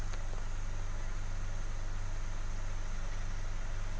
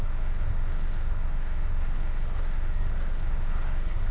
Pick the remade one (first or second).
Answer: second